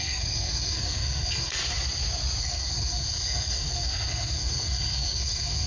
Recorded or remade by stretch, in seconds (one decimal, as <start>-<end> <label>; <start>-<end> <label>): 0.0-1.6 remade; 1.6-2.4 recorded; 2.4-5.7 remade